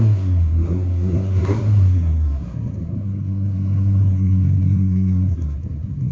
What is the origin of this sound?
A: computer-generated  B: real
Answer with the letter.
A